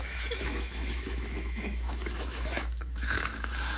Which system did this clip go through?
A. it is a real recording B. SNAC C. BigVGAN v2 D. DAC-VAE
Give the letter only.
D